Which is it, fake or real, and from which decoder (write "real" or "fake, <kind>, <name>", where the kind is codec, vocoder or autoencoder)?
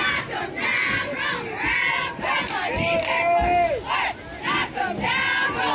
real